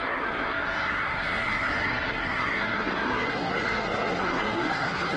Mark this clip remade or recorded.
remade